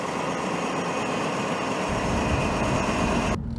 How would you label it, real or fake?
real